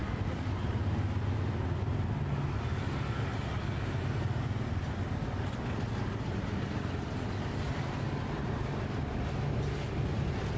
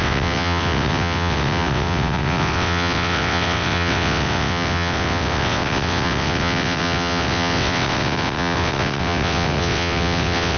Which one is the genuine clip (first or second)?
first